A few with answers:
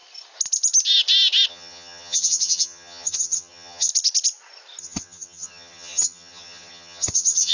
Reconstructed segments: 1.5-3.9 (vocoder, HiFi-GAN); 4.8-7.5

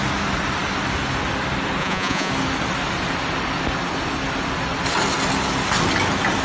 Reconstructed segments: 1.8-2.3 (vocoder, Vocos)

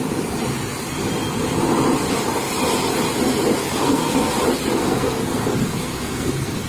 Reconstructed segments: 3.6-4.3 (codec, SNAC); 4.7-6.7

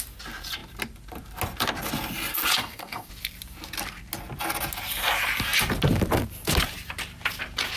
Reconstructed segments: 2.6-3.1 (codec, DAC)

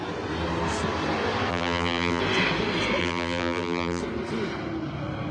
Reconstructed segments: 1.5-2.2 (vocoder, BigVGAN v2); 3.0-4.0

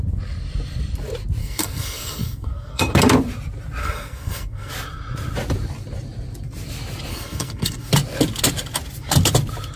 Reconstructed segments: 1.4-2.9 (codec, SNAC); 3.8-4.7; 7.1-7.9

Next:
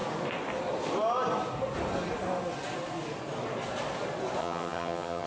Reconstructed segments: 4.4-5.3 (vocoder, HiFi-GAN)